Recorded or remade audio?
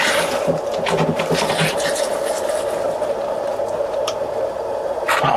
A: remade